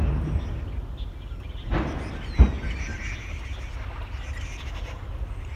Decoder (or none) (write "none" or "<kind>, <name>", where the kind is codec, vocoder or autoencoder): none